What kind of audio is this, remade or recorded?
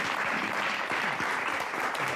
remade